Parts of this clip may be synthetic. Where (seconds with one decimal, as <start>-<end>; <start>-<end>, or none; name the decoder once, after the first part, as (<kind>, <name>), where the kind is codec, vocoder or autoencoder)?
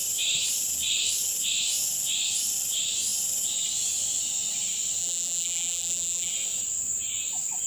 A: 5.0-6.3 (vocoder, BigVGAN v2)